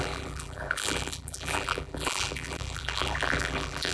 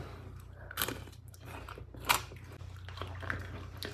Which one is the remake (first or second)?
first